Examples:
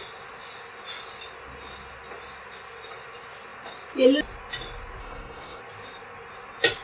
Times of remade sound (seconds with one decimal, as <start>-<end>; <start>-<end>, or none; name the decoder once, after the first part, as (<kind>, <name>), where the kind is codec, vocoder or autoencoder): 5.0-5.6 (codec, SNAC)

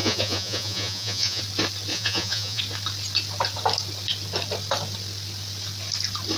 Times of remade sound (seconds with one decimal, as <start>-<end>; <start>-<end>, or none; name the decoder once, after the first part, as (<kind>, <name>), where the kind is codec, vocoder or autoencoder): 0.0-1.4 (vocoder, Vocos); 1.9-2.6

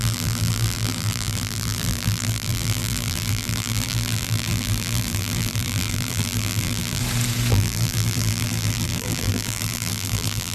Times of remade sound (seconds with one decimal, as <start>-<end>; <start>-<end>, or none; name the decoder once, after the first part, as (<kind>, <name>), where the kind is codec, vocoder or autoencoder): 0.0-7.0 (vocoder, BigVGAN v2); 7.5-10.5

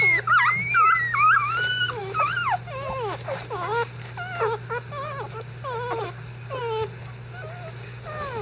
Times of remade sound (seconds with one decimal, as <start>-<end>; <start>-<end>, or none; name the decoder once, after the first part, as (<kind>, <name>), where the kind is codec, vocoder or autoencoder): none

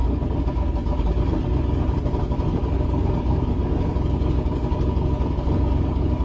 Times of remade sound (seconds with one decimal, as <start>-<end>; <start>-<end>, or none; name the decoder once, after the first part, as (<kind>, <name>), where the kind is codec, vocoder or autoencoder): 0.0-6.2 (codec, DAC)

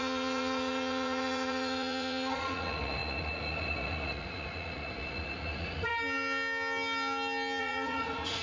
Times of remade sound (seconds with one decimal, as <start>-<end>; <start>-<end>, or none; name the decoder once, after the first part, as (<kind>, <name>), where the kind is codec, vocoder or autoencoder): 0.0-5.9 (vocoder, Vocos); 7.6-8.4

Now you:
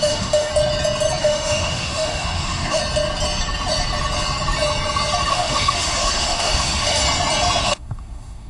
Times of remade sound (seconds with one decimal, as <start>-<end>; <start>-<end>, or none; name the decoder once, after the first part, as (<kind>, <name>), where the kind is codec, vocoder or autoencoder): 0.0-0.5 (autoencoder, DAC-VAE); 1.2-2.8; 5.3-7.0; 7.6-8.5